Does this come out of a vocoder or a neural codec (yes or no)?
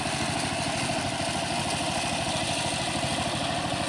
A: no